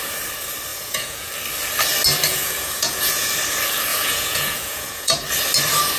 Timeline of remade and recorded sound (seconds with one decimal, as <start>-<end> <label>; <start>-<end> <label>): 0.0-0.7 recorded; 0.7-1.3 remade; 1.3-2.3 recorded; 2.3-3.3 remade; 3.3-3.9 recorded; 3.9-5.1 remade; 5.1-6.0 recorded